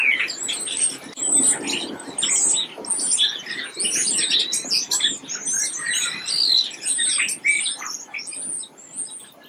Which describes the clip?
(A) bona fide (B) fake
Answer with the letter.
A